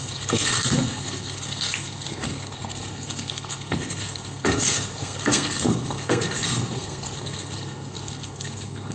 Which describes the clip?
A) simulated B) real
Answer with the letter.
A